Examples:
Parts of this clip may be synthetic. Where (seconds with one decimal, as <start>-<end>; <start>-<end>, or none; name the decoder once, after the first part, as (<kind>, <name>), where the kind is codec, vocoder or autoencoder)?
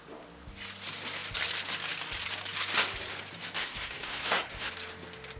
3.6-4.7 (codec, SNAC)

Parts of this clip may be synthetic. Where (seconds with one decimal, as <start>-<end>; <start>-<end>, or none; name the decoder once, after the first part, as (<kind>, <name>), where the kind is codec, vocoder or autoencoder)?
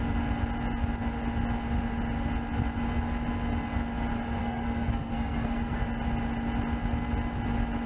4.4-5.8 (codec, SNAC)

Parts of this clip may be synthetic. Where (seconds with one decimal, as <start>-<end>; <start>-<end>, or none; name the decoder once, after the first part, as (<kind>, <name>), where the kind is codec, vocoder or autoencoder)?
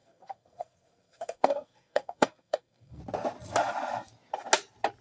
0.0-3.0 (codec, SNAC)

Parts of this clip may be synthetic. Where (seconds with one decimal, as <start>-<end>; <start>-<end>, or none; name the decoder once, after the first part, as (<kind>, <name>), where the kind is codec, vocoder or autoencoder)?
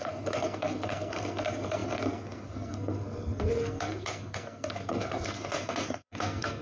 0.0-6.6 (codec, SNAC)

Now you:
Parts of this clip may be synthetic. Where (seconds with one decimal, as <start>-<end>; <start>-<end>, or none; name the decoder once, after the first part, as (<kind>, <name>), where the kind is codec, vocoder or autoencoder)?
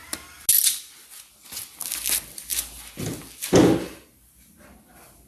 none